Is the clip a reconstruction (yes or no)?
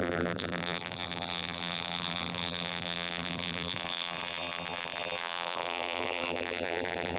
yes